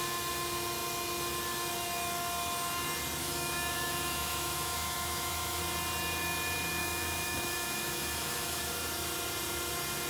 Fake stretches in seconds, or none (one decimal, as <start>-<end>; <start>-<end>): 3.2-5.6; 6.8-8.6